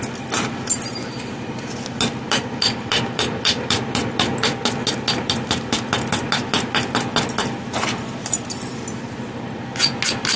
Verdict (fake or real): real